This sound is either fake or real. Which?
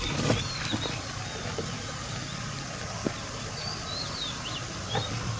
real